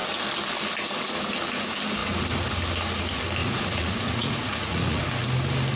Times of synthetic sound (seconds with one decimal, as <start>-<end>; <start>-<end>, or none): 3.4-5.0